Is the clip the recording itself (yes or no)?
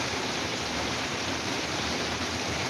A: no